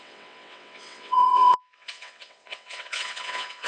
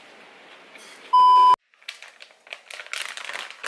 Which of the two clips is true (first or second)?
second